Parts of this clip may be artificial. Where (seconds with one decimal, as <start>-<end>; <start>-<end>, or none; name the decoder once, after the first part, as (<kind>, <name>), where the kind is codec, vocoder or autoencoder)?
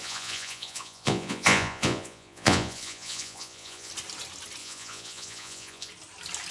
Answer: 0.0-3.9 (vocoder, Vocos); 4.6-5.9